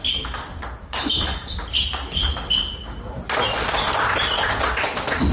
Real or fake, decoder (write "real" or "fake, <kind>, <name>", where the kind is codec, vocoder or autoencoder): real